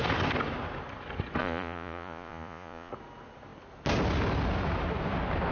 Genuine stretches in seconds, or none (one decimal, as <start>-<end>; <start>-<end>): 0.0-1.4; 2.9-5.5